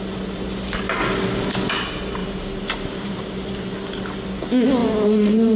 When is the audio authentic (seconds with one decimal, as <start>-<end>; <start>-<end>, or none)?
0.0-2.2; 3.7-4.8

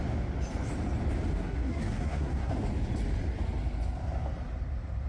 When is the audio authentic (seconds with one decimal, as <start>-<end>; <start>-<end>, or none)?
0.0-1.3; 2.5-5.1

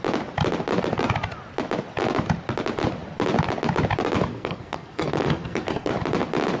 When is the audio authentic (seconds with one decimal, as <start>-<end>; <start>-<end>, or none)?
0.0-4.3; 5.9-6.6

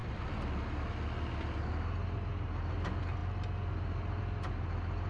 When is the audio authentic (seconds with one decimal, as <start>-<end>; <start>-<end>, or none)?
0.0-5.1

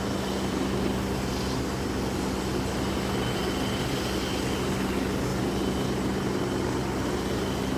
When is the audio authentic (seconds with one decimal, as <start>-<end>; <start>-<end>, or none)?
0.0-7.8

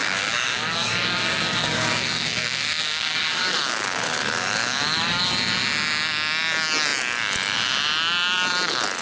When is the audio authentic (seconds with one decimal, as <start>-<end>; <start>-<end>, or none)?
5.2-9.0

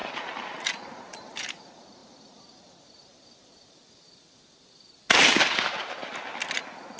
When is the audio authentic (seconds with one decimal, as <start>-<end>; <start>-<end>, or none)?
0.0-7.0

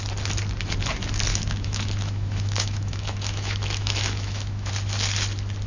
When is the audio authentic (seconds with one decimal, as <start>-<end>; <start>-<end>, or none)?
0.0-1.3; 4.7-5.7